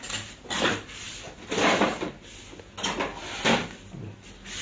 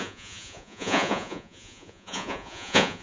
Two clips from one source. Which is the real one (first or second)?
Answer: first